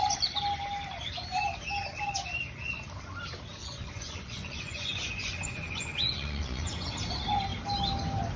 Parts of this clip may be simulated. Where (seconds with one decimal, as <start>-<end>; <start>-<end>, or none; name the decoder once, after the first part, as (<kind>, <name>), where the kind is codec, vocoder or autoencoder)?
3.6-6.9 (vocoder, Vocos)